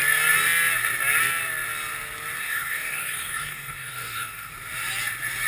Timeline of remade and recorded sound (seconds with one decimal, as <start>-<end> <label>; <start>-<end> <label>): 0.0-2.4 recorded; 2.4-4.5 remade; 4.5-5.5 recorded